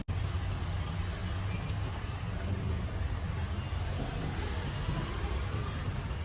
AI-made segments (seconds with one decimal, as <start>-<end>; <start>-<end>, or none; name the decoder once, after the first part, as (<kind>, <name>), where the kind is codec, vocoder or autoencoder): none